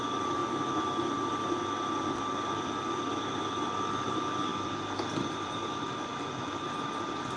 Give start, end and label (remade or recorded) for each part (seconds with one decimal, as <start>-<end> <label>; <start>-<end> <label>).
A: 0.0-0.4 remade; 0.4-2.9 recorded; 2.9-4.5 remade; 4.5-5.3 recorded; 5.3-6.1 remade; 6.1-6.6 recorded; 6.6-7.4 remade